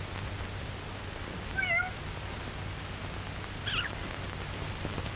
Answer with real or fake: real